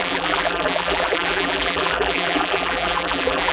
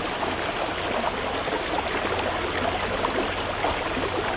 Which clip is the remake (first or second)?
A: first